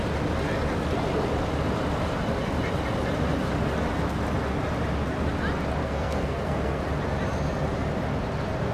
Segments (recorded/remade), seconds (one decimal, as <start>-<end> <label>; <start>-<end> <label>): 0.0-5.8 recorded; 5.8-6.8 remade; 6.8-8.7 recorded